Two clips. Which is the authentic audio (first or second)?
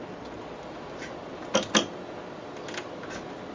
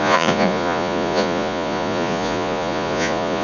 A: first